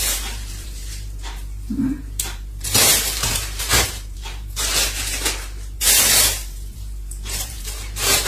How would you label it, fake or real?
fake